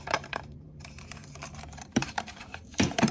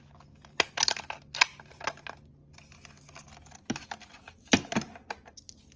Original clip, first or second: second